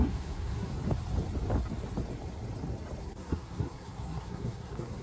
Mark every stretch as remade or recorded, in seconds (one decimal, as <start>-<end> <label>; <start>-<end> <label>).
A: 0.0-0.7 remade; 0.7-3.0 recorded; 3.0-5.0 remade